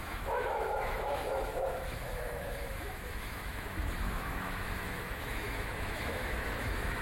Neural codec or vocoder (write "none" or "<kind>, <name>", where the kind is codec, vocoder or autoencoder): autoencoder, DAC-VAE